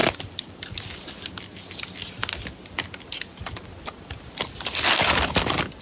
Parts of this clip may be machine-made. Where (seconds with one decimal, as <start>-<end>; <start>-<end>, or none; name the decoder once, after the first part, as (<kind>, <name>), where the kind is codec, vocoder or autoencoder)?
none